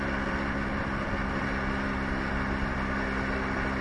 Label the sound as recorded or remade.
recorded